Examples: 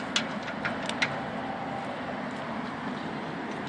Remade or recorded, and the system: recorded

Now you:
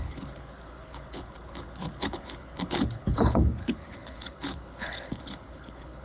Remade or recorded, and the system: remade, codec, HILCodec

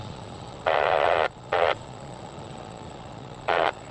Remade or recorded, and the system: remade, vocoder, Vocos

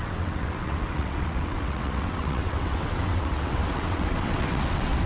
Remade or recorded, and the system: remade, vocoder, WaveNeXt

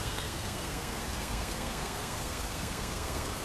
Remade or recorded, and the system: remade, codec, SNAC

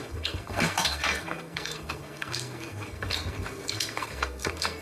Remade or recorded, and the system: remade, codec, SNAC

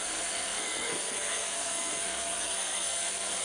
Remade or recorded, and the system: remade, codec, SNAC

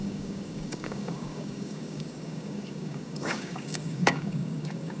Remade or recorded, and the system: remade, codec, DAC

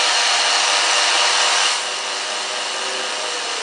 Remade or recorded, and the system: recorded